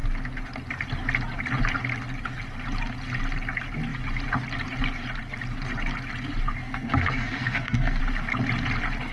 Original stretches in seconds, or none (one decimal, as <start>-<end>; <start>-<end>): 0.0-6.6; 8.0-9.1